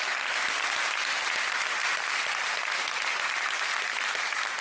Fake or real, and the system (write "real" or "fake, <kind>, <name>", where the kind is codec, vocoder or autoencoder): real